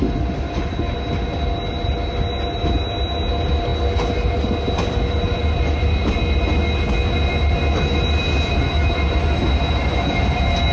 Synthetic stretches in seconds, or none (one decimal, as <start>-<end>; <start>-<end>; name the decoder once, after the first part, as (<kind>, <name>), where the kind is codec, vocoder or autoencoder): none